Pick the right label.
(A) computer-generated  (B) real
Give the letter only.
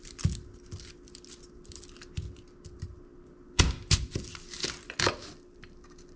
B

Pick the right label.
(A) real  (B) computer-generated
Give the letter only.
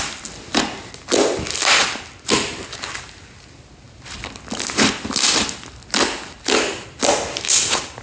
A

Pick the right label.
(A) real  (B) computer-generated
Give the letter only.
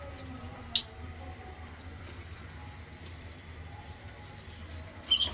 A